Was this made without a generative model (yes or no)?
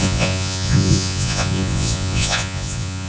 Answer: no